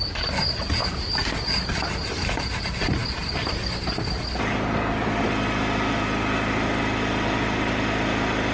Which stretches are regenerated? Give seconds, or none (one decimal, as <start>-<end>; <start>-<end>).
0.8-1.4